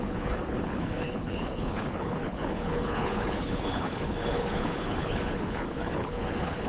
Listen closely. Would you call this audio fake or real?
fake